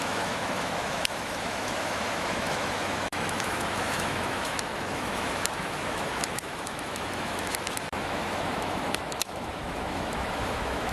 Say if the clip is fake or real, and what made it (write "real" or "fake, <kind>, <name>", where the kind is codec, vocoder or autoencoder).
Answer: fake, autoencoder, DAC-VAE